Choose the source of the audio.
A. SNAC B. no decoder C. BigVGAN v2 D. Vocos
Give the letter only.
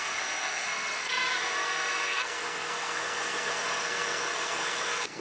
A